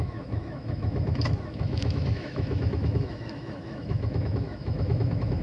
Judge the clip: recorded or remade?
remade